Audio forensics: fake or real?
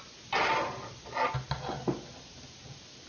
real